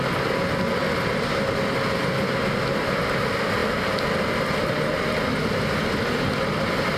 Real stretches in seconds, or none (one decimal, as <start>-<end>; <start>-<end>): 0.0-7.0